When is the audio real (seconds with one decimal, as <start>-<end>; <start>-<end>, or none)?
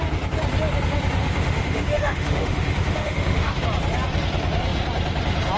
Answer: 0.0-1.2; 3.6-5.6